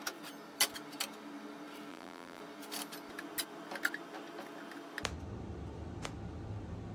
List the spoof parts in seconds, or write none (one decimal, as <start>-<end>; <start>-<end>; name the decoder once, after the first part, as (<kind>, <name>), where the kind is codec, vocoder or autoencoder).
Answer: 1.9-2.4 (vocoder, BigVGAN v2)